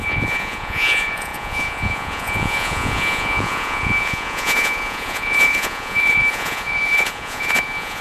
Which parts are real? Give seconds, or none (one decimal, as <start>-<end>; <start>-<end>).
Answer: none